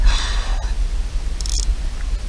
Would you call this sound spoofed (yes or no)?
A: no